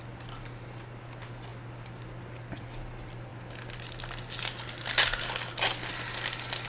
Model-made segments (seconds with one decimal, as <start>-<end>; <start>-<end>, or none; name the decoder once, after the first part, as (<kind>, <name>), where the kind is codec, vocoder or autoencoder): none